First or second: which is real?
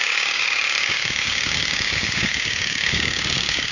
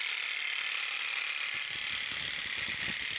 second